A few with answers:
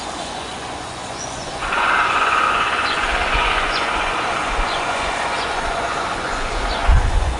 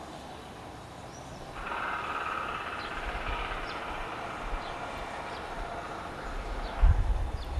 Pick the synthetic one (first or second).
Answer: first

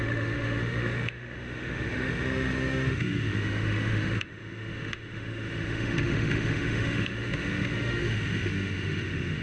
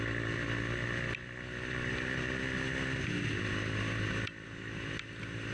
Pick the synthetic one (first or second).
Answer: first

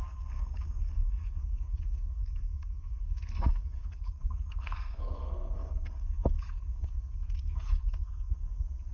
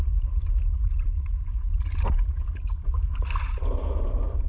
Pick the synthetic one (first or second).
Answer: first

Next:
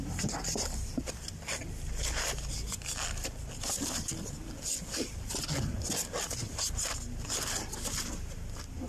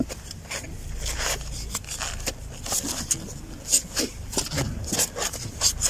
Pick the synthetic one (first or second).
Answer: first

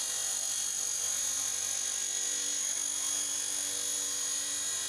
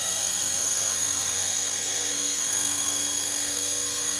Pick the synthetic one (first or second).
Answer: second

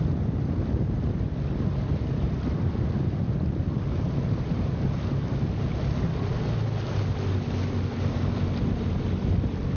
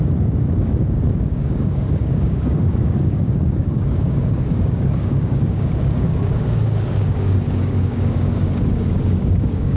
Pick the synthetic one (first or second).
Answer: second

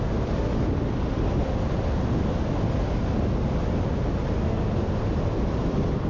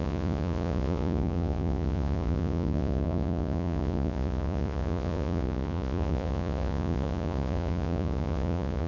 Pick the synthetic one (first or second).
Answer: second